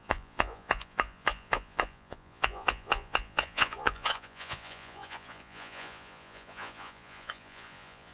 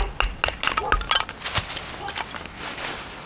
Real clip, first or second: second